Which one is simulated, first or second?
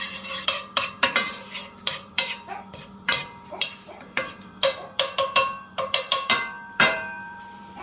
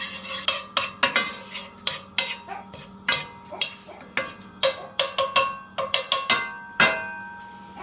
first